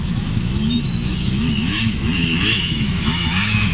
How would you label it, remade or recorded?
remade